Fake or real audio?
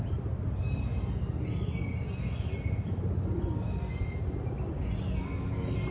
real